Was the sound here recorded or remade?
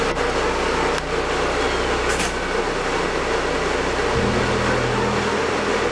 recorded